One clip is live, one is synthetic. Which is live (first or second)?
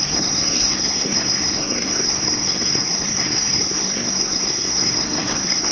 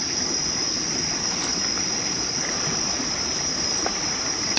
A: second